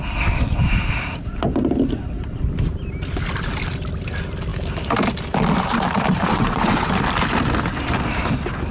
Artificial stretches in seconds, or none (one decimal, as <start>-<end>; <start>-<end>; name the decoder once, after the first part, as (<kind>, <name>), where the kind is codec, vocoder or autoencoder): 6.3-6.9 (vocoder, WaveNeXt)